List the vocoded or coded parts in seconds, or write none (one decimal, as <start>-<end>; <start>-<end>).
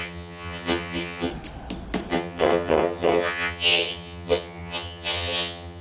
0.0-1.3; 2.1-5.8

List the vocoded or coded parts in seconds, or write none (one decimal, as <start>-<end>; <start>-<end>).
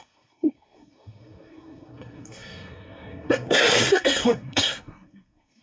0.0-5.6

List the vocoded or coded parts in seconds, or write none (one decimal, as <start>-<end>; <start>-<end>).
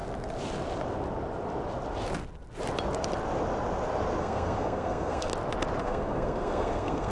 4.2-5.3; 5.8-7.1